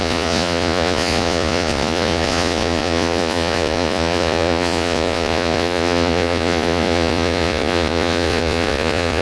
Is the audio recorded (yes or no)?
no